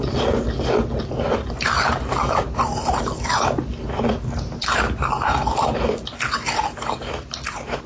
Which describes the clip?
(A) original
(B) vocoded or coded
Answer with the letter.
A